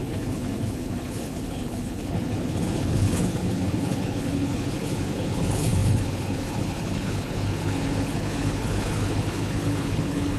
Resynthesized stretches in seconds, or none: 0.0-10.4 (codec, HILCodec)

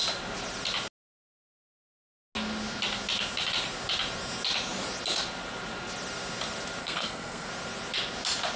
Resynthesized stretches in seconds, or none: 6.8-7.5 (codec, SNAC)